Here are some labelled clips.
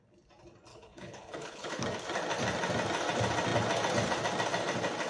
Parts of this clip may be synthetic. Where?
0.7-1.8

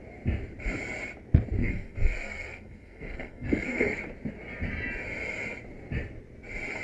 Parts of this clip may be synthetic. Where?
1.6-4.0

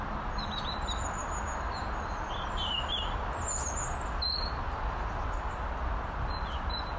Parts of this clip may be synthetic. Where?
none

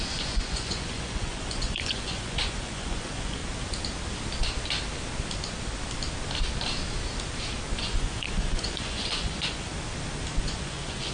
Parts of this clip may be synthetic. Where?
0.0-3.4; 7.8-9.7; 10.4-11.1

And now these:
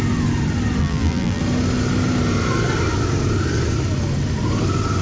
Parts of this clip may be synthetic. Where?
0.8-1.4

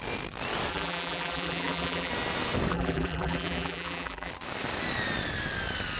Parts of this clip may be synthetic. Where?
0.7-2.1; 2.7-4.3